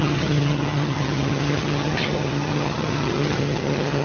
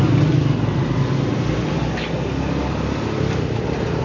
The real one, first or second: second